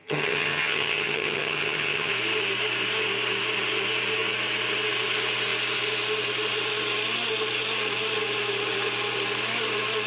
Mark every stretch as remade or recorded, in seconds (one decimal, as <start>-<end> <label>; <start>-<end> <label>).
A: 0.0-2.1 remade; 2.1-10.1 recorded